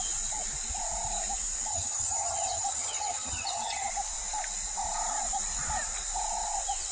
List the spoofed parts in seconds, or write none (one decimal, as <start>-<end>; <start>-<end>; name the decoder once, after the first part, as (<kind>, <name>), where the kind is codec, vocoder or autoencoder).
1.7-3.9 (vocoder, HiFi-GAN)